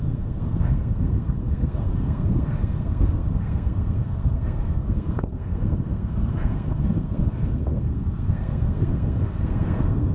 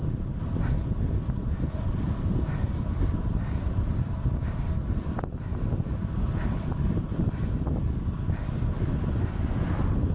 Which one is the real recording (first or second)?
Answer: second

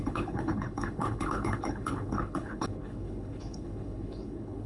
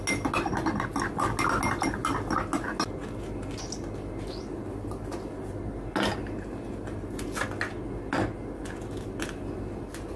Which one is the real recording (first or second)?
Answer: second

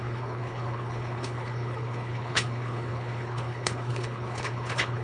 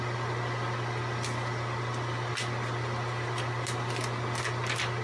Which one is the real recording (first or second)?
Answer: second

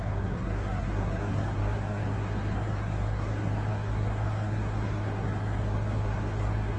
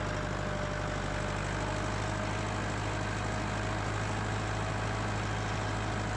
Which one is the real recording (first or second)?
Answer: second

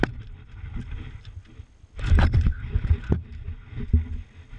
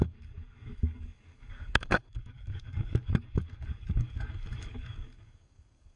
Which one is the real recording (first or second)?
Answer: first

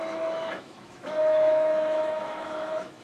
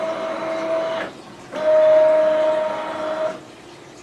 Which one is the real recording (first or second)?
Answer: second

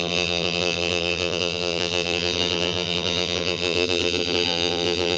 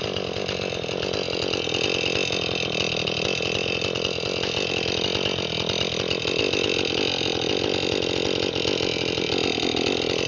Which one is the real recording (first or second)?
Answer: second